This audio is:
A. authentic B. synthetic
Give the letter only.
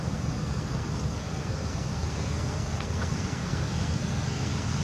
B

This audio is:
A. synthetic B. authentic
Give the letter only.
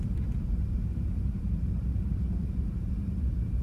A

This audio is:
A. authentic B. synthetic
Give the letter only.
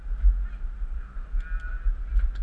A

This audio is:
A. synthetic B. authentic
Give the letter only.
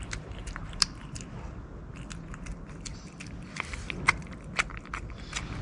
B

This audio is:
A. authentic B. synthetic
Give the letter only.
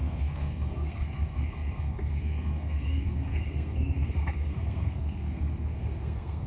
B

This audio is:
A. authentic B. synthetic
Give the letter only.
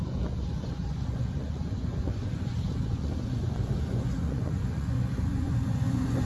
B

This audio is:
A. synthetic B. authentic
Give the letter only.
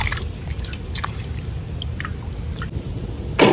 B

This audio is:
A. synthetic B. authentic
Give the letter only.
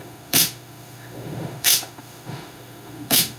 A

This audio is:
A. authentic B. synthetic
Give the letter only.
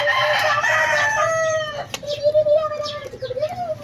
B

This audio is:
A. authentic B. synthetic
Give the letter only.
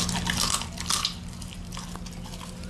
A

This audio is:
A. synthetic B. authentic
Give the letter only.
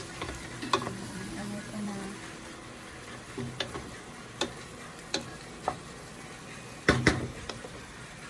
A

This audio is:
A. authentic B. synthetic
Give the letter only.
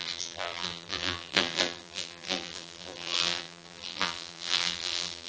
B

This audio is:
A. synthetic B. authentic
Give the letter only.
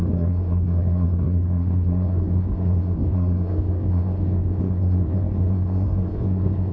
A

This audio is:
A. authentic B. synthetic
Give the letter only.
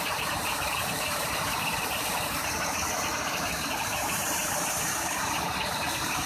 B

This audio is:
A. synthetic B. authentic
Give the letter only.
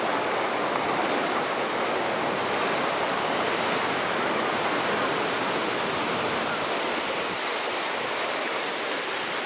B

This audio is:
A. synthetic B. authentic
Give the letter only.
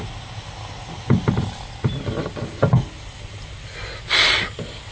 B